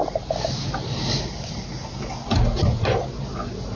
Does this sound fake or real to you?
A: real